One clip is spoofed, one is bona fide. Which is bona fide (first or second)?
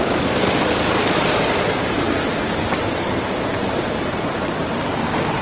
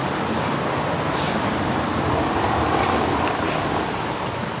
second